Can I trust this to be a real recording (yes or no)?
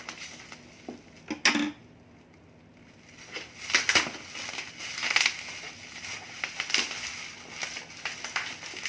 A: yes